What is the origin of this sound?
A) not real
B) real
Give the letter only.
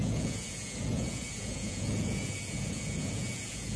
A